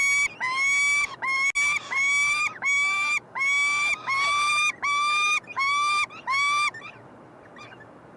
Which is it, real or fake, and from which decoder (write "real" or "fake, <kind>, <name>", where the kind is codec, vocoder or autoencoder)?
real